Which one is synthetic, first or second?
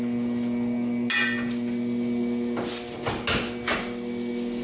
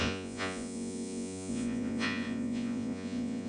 second